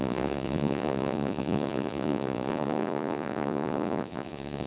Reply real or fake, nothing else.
fake